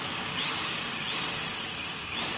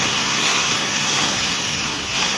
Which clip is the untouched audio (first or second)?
first